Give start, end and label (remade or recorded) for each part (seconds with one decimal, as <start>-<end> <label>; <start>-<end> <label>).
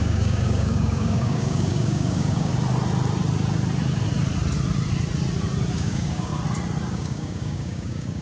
0.0-2.5 remade; 2.5-5.7 recorded; 5.7-6.3 remade; 6.3-6.9 recorded; 6.9-8.2 remade